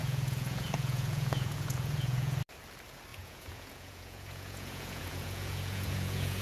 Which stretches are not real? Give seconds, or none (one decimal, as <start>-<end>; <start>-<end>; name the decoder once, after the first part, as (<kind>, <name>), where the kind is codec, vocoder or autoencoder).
0.0-2.4 (vocoder, Vocos); 3.1-6.4